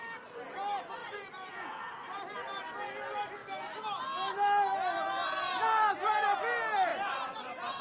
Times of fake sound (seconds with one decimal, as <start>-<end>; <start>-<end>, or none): 1.0-1.8; 6.9-7.8

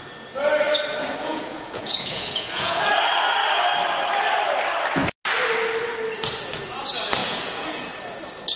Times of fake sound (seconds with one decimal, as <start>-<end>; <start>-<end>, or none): 1.0-2.9; 7.2-7.9

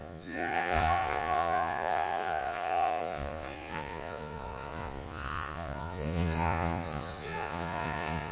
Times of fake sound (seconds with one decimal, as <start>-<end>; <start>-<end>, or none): 0.0-8.3

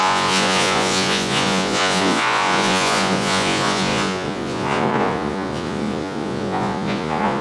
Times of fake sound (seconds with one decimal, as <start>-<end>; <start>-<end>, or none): 0.0-7.4

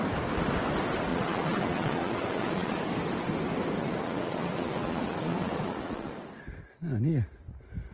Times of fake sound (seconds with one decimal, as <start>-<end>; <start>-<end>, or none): 1.1-2.8; 3.8-6.2